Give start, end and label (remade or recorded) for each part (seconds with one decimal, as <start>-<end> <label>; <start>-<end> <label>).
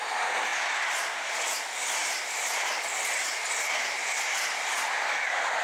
0.0-5.6 recorded